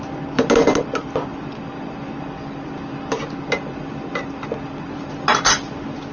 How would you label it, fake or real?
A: real